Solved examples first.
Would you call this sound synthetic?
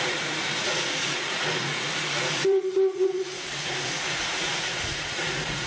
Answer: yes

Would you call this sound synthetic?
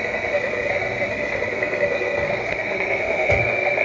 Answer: yes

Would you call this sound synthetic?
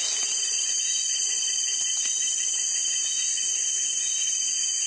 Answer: no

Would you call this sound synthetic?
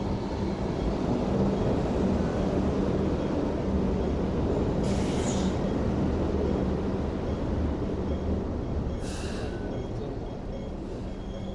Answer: no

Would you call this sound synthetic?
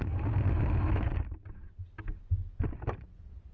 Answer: no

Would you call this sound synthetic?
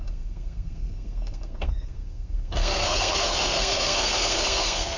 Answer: yes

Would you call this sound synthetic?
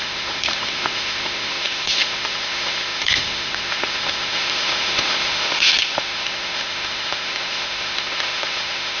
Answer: yes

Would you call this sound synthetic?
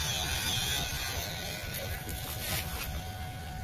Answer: no